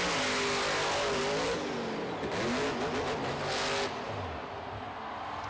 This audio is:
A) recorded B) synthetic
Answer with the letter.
A